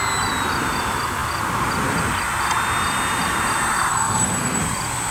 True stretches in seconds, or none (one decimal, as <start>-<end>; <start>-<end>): 0.0-3.9; 4.6-5.1